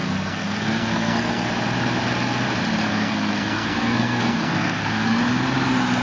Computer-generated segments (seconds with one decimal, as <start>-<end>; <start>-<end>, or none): 0.0-1.5; 2.9-5.2